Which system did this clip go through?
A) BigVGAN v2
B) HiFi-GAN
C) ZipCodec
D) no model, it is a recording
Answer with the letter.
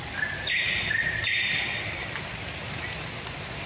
A